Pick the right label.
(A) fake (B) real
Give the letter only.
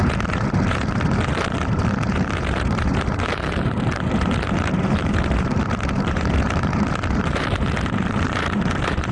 A